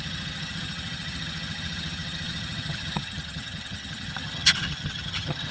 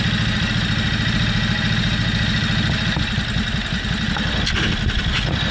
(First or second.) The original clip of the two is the second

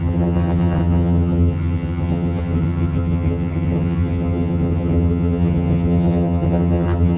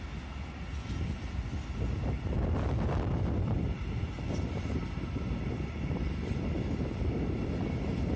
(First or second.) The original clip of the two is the second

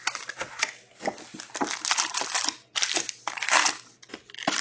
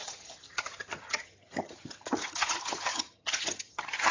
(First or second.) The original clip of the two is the first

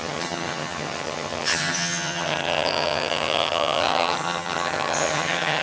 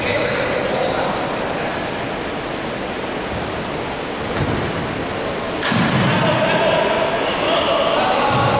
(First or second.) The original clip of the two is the second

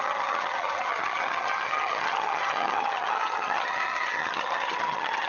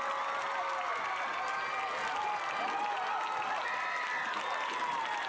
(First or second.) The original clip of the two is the second